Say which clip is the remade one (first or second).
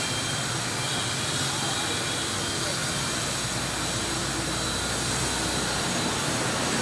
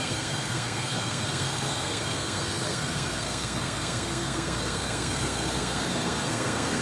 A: second